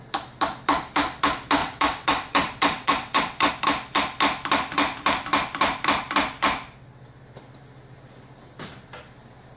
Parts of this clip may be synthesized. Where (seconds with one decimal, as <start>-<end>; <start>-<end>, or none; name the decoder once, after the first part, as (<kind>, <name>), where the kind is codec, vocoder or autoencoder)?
1.6-3.5 (vocoder, WaveNeXt)